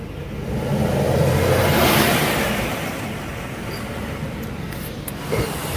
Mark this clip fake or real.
real